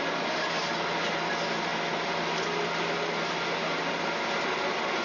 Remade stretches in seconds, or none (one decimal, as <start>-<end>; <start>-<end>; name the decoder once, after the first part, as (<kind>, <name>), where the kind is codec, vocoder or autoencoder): none